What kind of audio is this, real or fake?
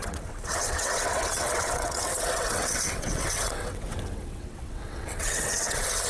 fake